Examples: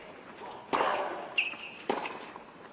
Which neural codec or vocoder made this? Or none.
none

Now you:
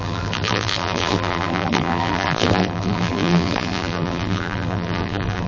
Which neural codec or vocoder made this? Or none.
vocoder, BigVGAN v2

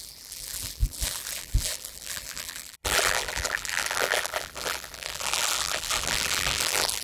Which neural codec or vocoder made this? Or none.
vocoder, BigVGAN v2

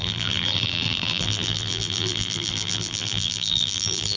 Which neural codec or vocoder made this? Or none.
vocoder, BigVGAN v2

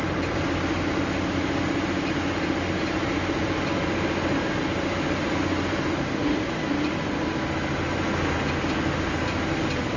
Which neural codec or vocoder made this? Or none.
none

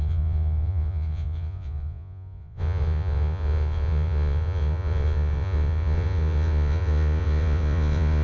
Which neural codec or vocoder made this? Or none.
vocoder, Vocos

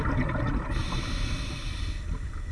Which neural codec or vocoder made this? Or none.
none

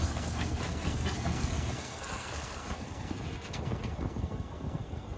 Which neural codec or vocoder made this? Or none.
codec, SNAC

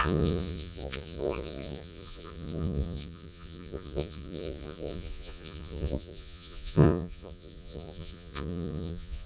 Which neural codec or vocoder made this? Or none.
vocoder, Vocos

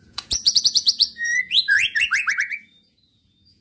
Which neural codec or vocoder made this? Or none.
vocoder, Vocos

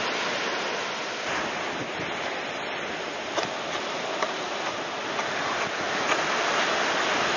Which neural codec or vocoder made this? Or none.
none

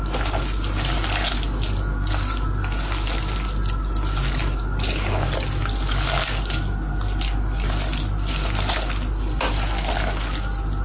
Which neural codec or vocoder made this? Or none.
none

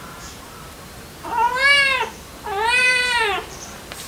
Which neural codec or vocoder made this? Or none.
vocoder, BigVGAN v2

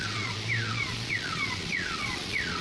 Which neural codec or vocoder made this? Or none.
vocoder, Vocos